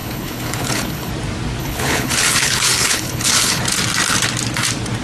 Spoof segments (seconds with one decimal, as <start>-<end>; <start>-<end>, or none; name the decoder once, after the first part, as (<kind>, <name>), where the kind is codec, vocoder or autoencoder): 0.0-1.1 (codec, HILCodec); 1.6-3.6